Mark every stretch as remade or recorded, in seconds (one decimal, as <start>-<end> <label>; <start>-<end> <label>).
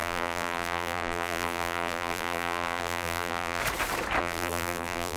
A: 0.0-3.6 remade; 3.6-4.2 recorded; 4.2-5.2 remade